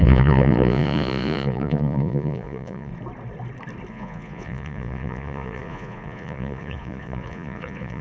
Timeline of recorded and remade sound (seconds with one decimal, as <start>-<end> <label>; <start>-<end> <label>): 0.0-2.9 remade; 2.9-3.9 recorded; 3.9-8.0 remade